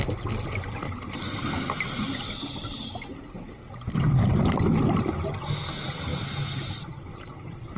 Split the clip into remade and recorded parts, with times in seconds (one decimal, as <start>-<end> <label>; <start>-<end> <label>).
0.0-7.8 recorded